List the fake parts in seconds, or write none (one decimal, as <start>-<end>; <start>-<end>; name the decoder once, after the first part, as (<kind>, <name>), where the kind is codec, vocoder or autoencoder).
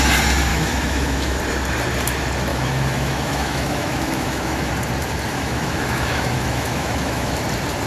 0.5-1.4 (autoencoder, DAC-VAE); 2.5-4.7; 5.3-7.4